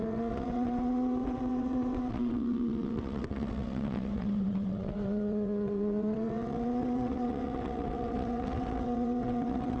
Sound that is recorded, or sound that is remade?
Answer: remade